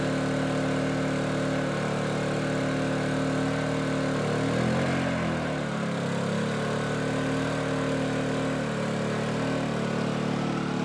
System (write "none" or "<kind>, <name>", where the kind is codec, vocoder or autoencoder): none